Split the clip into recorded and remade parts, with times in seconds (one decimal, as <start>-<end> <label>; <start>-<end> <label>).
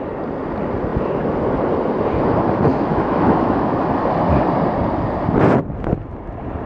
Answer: 0.0-2.7 recorded; 2.7-3.8 remade; 3.8-6.7 recorded